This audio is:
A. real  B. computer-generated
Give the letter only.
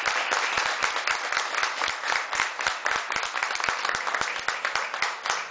A